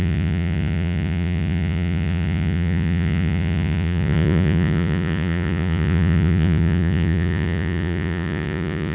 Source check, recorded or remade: remade